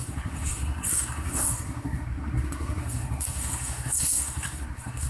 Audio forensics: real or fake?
fake